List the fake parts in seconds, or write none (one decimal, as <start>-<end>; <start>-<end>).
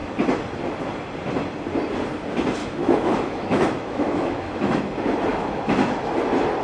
2.6-4.8; 5.3-6.1